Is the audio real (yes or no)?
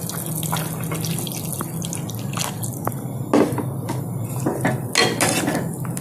yes